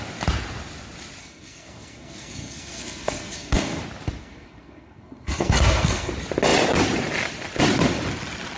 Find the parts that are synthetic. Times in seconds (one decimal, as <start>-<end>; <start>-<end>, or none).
1.2-3.8; 4.2-6.1

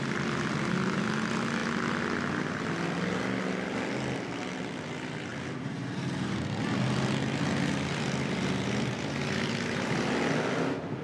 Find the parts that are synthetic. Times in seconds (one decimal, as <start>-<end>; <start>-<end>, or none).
none

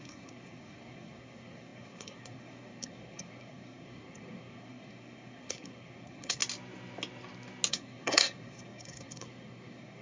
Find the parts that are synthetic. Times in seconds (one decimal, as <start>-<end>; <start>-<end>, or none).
0.0-6.4; 7.7-10.0